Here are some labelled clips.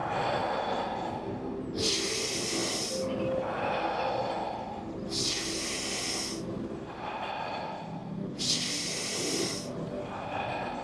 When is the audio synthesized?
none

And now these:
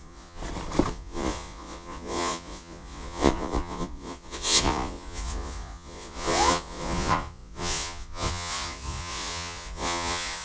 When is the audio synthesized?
0.0-0.4 (vocoder, Vocos); 0.9-10.4

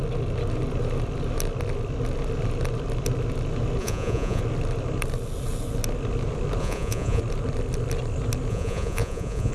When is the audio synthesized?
3.8-4.4 (vocoder, Vocos); 6.6-7.2; 8.5-9.5

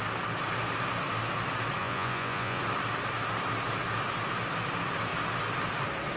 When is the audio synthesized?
1.8-2.6 (vocoder, Vocos)

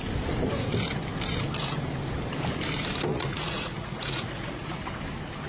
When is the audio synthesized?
3.1-4.8 (vocoder, Vocos)

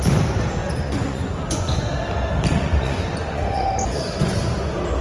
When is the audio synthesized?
0.6-1.8 (vocoder, Vocos); 2.5-4.4

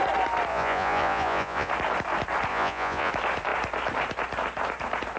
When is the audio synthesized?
0.5-1.7 (vocoder, Vocos); 2.5-3.1

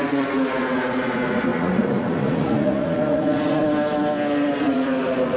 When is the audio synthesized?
0.0-3.6 (vocoder, Vocos); 4.6-5.4